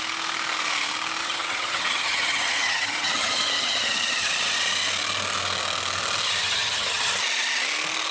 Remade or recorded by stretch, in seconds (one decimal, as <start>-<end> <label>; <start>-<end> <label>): 0.0-1.2 recorded; 1.2-4.3 remade; 4.3-6.4 recorded; 6.4-7.1 remade; 7.1-8.1 recorded